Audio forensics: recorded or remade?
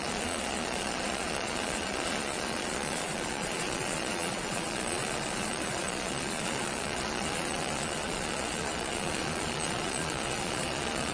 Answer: remade